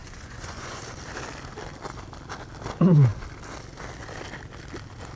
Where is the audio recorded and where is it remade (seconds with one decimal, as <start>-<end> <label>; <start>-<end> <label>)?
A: 0.0-0.8 remade; 0.8-5.2 recorded